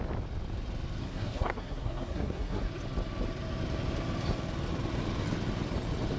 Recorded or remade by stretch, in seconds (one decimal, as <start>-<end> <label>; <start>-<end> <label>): 0.0-1.0 recorded; 1.0-2.6 remade; 2.6-6.2 recorded